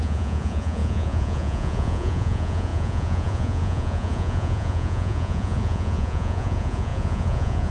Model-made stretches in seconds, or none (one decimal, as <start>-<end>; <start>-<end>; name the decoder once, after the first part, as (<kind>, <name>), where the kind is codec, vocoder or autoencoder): 0.0-7.7 (vocoder, Vocos)